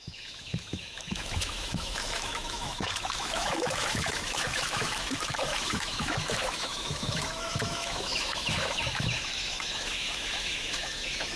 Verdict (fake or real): fake